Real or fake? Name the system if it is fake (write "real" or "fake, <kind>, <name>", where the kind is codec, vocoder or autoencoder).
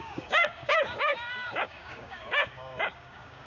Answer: fake, codec, DAC